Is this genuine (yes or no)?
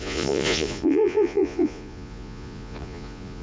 no